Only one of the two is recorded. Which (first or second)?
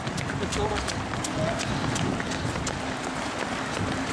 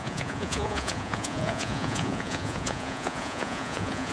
first